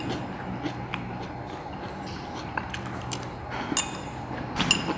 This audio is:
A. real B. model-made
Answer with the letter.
A